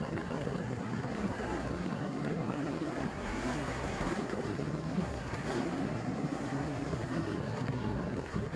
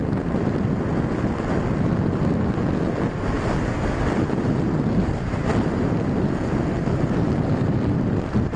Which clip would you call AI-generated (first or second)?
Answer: first